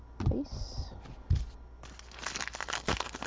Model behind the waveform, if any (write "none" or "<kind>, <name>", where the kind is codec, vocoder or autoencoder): none